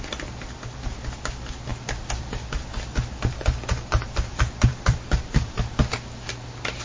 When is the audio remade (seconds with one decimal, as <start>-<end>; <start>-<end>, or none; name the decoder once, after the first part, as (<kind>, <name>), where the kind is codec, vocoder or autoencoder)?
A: 1.7-5.8 (vocoder, BigVGAN v2)